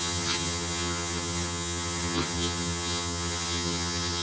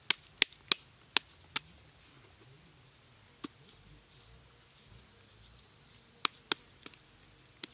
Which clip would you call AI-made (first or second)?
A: first